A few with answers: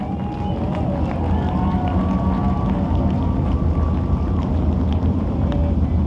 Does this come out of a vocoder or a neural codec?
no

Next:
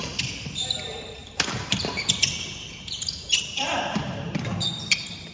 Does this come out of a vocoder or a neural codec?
yes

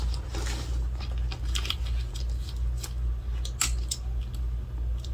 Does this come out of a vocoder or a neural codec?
no